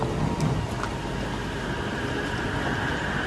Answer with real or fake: real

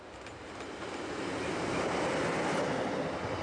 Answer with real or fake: real